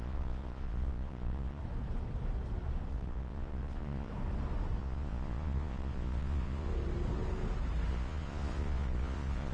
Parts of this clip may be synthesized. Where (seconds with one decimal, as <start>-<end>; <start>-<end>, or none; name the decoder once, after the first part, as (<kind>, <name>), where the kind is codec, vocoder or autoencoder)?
0.0-1.6 (vocoder, Vocos); 2.9-4.1; 4.8-6.7; 7.9-9.5